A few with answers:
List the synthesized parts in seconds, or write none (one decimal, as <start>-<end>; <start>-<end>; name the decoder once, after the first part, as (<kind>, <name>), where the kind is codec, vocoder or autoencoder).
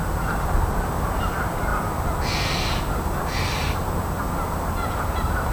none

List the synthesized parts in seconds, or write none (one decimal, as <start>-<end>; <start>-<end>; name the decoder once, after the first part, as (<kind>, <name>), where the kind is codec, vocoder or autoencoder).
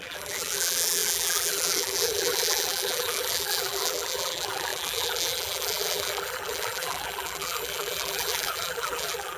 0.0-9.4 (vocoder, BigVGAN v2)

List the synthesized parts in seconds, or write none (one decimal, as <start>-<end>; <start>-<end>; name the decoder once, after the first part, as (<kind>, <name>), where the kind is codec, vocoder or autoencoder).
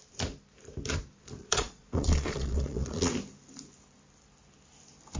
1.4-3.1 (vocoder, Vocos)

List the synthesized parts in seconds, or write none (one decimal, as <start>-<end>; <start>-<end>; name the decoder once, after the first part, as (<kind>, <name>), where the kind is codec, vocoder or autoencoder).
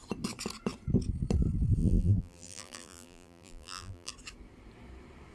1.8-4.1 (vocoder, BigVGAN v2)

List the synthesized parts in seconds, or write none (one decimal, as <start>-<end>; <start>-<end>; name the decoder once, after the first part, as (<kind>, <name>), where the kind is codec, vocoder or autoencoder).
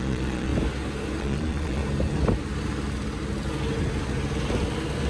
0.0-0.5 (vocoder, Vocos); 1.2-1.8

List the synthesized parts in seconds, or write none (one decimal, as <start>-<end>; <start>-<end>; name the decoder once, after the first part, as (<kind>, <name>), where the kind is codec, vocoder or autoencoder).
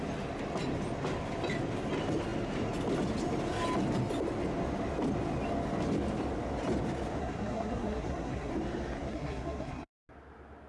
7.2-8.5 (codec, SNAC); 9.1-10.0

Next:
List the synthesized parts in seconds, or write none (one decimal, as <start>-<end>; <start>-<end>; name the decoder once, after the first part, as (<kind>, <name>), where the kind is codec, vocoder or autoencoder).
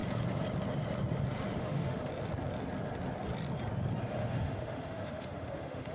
1.6-2.1 (autoencoder, DAC-VAE); 4.1-5.9